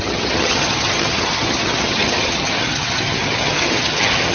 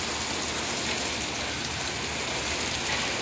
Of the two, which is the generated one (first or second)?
first